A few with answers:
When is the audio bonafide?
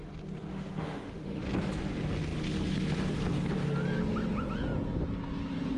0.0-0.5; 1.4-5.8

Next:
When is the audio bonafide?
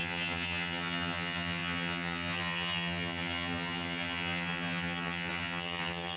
none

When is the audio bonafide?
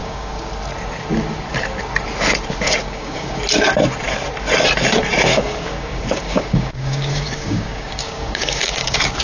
0.5-2.8; 3.4-5.3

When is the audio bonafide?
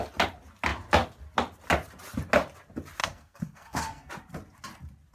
0.0-3.0; 4.1-5.1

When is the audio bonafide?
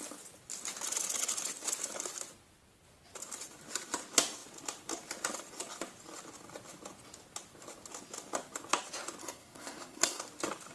0.0-9.2; 10.2-10.7